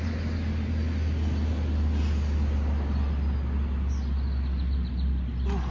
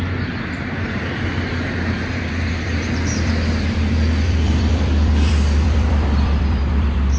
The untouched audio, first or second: first